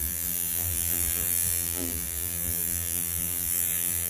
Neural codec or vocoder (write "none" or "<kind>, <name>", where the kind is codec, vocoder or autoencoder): vocoder, BigVGAN v2